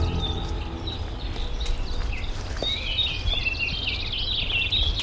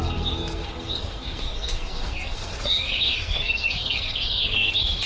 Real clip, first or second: first